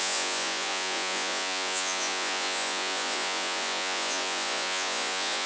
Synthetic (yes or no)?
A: yes